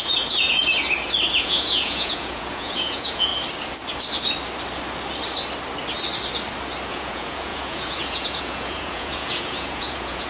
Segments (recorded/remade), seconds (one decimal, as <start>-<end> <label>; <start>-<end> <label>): 0.0-0.6 remade; 0.6-1.4 recorded; 1.4-3.3 remade; 3.3-6.9 recorded; 6.9-10.3 remade